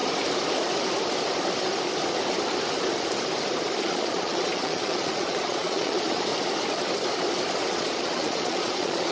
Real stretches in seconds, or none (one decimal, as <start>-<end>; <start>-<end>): 0.0-3.8; 6.3-7.7